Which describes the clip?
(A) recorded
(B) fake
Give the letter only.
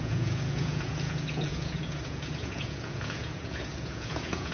B